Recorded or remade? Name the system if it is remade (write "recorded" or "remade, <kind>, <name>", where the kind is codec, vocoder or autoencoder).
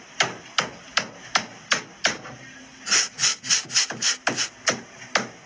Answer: recorded